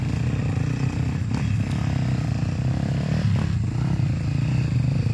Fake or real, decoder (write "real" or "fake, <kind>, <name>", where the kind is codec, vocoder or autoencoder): real